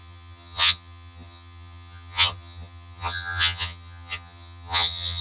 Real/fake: fake